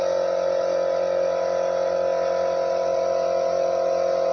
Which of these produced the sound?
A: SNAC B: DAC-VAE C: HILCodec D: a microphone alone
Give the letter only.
D